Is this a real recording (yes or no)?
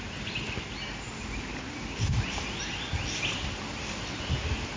yes